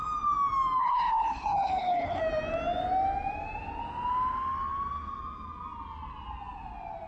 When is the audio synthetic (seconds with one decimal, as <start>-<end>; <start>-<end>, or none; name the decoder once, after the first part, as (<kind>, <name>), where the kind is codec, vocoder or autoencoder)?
0.8-2.2 (codec, HILCodec)